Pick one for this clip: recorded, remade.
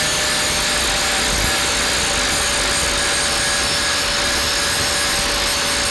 recorded